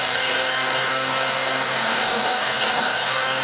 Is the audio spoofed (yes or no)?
yes